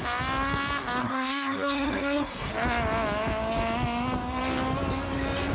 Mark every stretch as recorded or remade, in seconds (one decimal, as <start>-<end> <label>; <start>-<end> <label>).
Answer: 0.0-1.0 recorded; 1.0-2.5 remade; 2.5-5.5 recorded